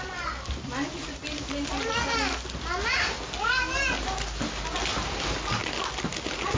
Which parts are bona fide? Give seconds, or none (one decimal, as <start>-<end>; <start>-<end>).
0.0-6.6